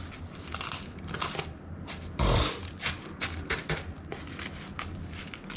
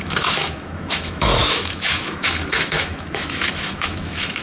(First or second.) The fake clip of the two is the second